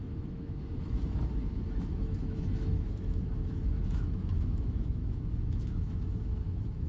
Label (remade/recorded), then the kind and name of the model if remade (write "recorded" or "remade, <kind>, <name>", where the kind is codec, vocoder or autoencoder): remade, autoencoder, DAC-VAE